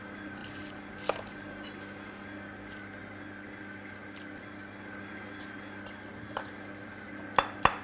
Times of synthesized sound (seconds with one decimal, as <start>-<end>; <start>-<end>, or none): none